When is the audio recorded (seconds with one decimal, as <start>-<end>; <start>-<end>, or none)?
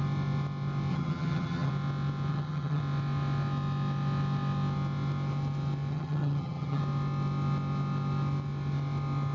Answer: 0.0-0.9; 1.7-2.3; 2.8-5.9; 6.8-9.3